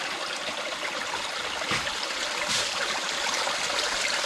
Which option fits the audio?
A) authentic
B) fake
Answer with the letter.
A